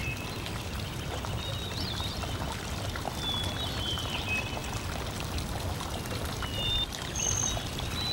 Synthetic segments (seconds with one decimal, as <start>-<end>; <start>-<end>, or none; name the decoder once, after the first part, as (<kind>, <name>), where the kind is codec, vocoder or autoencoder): 0.0-4.6 (vocoder, BigVGAN v2); 5.5-8.1